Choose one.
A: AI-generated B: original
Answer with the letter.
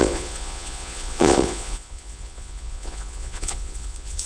A